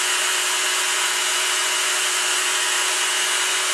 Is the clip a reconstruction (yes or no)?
yes